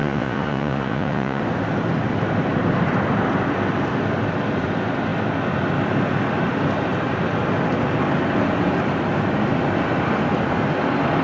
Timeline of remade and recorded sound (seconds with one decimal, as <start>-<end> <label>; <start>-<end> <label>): 0.0-1.4 remade; 1.4-11.2 recorded